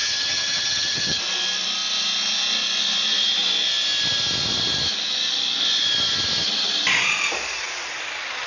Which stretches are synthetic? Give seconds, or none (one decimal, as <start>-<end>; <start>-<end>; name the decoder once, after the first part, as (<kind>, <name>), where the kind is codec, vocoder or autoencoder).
0.0-1.2 (vocoder, HiFi-GAN)